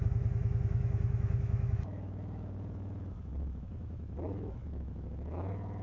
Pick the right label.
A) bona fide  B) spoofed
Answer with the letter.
B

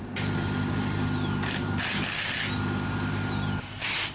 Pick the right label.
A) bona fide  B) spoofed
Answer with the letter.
A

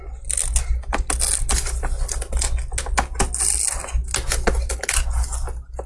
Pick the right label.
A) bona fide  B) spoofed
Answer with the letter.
A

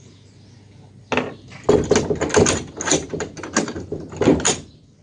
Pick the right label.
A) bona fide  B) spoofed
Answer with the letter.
A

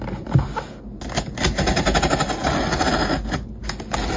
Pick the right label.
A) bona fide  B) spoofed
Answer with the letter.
A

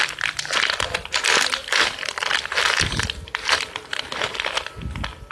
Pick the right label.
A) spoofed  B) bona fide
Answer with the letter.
B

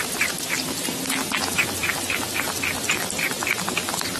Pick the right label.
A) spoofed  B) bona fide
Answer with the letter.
B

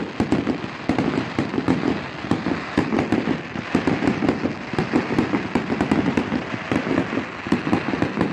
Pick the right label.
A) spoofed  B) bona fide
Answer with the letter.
B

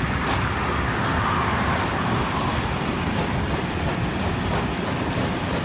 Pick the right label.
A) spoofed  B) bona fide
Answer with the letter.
B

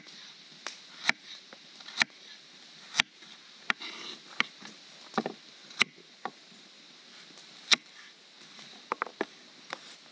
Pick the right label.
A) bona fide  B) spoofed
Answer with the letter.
A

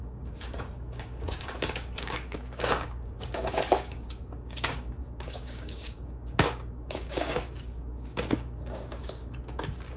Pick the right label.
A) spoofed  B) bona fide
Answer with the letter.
A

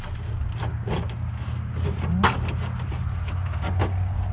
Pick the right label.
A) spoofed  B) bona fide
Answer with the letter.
B